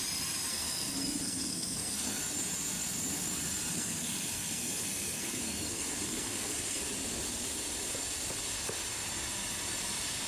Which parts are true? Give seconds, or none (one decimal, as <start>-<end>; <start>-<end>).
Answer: 0.0-0.5; 2.2-3.7; 6.8-10.3